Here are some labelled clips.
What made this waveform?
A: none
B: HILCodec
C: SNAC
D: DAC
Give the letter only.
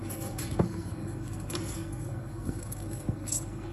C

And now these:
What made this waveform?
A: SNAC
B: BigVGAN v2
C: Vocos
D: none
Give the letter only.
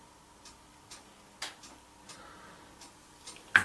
D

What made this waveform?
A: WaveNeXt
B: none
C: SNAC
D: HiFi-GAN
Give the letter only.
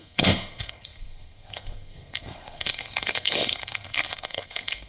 C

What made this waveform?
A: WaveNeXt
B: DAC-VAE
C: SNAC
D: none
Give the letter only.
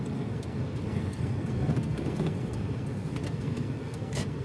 C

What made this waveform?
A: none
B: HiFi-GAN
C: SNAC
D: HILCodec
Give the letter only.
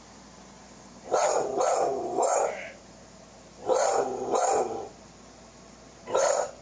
A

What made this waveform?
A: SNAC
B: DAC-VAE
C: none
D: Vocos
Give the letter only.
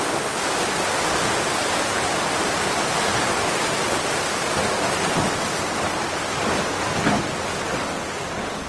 C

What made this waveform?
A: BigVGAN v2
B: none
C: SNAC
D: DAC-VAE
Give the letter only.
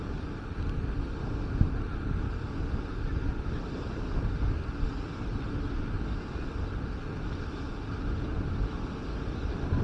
B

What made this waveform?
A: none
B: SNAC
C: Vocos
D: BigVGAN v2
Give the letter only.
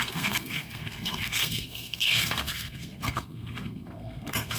B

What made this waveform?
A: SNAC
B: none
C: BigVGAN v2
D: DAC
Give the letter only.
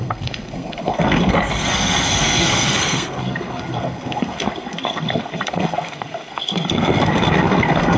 A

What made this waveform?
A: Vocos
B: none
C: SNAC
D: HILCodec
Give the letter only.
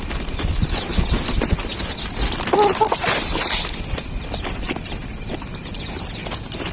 B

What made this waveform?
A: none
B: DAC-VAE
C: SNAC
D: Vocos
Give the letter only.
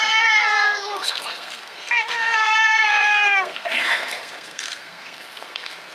C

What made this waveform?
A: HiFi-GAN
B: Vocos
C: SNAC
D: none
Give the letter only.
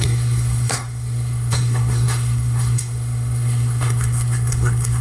C